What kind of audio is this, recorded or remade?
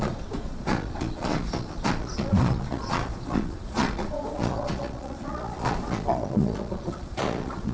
remade